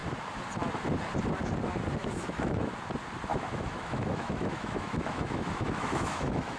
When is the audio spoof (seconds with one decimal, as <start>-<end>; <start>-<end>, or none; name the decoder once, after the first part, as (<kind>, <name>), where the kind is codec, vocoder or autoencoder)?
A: 2.0-2.7 (autoencoder, DAC-VAE); 3.3-6.6